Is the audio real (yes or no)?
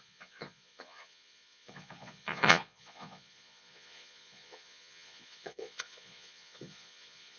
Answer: no